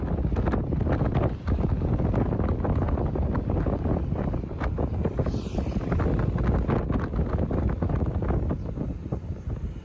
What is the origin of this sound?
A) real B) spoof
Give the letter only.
A